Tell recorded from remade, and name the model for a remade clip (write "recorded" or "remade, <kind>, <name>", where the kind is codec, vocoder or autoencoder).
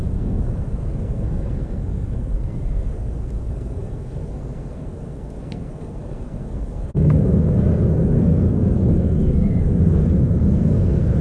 remade, codec, SNAC